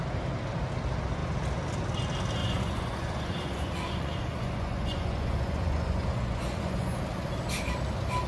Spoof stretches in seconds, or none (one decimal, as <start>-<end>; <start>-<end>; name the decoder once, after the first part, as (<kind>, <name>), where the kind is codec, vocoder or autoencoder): 2.4-7.0 (vocoder, Vocos)